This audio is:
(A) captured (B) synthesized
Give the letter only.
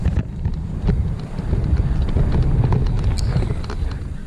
A